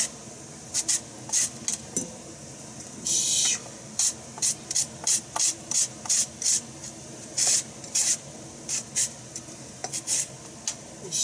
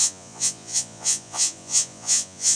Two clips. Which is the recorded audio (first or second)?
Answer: first